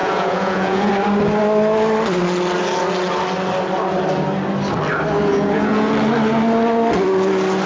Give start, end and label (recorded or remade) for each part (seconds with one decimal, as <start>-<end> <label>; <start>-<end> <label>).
0.0-0.9 remade; 0.9-5.3 recorded; 5.3-5.9 remade; 5.9-7.7 recorded

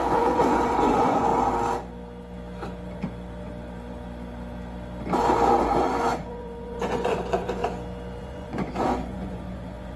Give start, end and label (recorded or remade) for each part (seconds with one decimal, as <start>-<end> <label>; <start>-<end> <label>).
0.0-1.3 remade; 1.3-5.6 recorded; 5.6-7.6 remade; 7.6-8.2 recorded; 8.2-10.0 remade

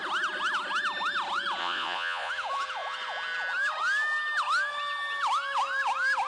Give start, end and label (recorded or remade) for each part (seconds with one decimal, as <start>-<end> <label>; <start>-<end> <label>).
0.0-1.6 recorded; 1.6-2.3 remade; 2.3-6.3 recorded

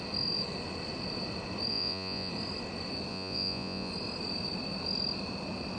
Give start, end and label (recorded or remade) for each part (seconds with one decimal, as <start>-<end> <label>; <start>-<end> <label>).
0.0-1.7 recorded; 1.7-2.3 remade; 2.3-3.1 recorded; 3.1-3.9 remade; 3.9-5.8 recorded

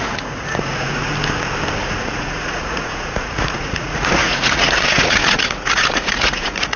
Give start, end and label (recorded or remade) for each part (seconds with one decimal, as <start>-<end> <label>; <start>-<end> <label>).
0.0-1.0 remade; 1.0-1.8 recorded; 1.8-6.8 remade

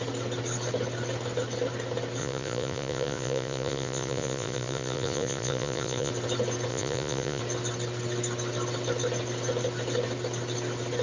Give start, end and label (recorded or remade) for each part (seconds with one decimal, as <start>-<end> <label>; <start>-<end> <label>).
0.0-2.2 recorded; 2.2-6.1 remade; 6.1-6.7 recorded; 6.7-7.4 remade; 7.4-11.0 recorded

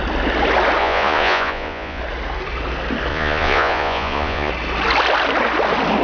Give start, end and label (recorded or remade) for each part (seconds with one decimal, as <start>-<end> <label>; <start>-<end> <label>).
0.0-0.8 recorded; 0.8-2.0 remade; 2.0-3.1 recorded; 3.1-4.5 remade; 4.5-6.0 recorded